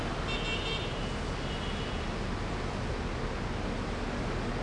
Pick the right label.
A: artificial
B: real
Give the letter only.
B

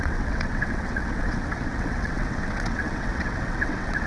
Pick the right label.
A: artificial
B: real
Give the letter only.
A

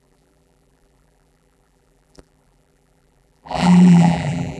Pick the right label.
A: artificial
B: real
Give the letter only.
A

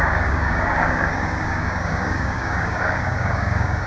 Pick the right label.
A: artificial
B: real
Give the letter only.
A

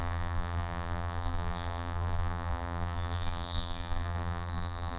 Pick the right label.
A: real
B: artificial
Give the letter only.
B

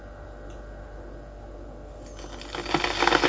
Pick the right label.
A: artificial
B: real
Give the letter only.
B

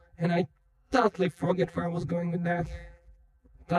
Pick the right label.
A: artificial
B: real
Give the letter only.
A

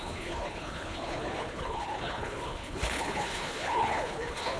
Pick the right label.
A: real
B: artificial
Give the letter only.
B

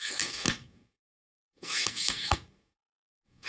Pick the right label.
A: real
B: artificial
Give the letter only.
B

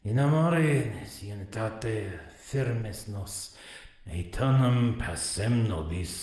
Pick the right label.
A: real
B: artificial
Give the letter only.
A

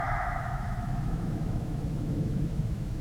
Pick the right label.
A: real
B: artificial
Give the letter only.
B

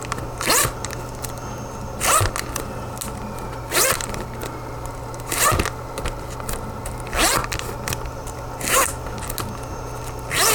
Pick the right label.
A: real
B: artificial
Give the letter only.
A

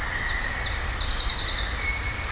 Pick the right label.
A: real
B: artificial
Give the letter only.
A